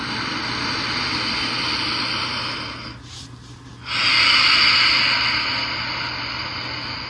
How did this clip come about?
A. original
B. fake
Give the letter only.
A